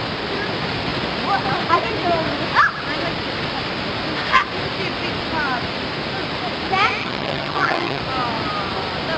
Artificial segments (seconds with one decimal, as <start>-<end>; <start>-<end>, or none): 7.0-8.0